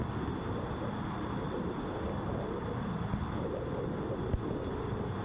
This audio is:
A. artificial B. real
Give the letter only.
B